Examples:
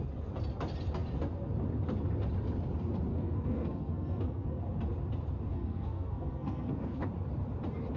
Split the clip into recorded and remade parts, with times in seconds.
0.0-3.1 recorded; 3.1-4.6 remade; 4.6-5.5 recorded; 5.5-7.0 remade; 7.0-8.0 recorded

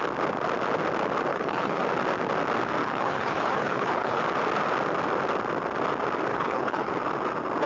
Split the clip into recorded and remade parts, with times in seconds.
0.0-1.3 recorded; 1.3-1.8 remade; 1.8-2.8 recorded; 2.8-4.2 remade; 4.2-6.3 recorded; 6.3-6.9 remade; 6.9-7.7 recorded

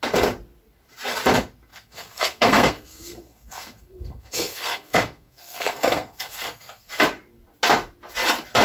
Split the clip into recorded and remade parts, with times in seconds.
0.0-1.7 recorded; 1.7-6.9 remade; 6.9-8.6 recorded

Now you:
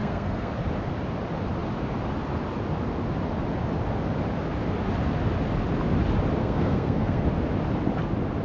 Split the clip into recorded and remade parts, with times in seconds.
0.0-0.5 remade; 0.5-6.4 recorded; 6.4-7.2 remade; 7.2-8.4 recorded